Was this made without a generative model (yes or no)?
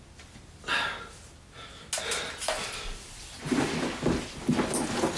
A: yes